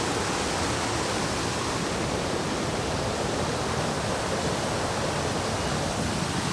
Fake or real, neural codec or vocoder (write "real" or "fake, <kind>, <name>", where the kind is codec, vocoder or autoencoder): real